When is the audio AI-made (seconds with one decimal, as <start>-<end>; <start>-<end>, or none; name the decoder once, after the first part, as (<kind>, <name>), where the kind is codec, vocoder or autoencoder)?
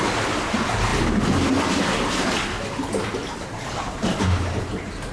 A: none